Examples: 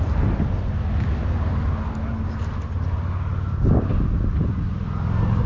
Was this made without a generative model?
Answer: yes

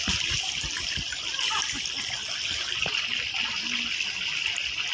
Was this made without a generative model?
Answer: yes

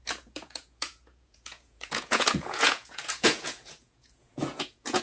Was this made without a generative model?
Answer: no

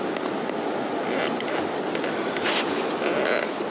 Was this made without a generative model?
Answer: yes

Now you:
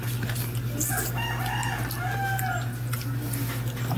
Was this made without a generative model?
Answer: yes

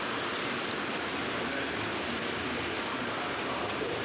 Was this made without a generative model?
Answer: yes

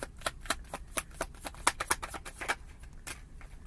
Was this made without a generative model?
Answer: yes